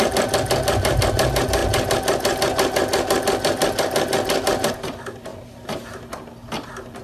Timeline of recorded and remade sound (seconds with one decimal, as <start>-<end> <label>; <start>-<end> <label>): 0.0-5.3 recorded; 5.3-6.5 remade; 6.5-7.0 recorded